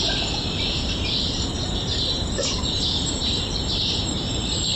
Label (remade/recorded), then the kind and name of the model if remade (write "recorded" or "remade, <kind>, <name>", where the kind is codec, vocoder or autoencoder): remade, vocoder, BigVGAN v2